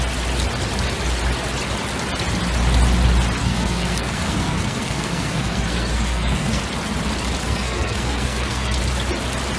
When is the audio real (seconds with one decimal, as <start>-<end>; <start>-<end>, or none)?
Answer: 0.0-3.4; 6.6-7.4; 8.8-9.6